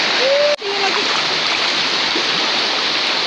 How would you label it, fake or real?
real